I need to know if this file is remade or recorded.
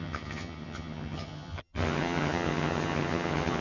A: remade